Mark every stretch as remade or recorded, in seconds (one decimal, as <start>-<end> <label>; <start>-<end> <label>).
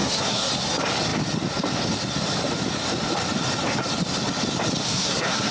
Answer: 0.0-0.5 remade; 0.5-4.8 recorded; 4.8-5.5 remade